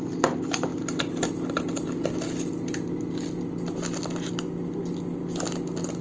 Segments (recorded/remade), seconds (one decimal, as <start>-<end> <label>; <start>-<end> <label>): 0.0-6.0 recorded